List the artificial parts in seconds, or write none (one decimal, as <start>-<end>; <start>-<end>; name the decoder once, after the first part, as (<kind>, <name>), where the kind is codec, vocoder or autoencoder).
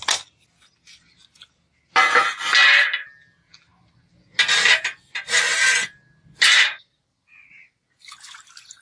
none